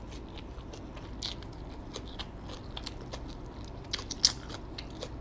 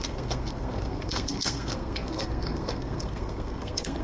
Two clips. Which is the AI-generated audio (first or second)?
second